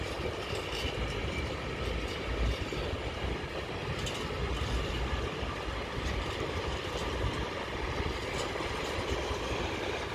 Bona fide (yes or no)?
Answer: yes